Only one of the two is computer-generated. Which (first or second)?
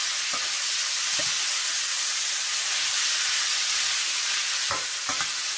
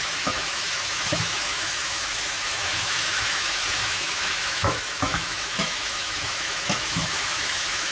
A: second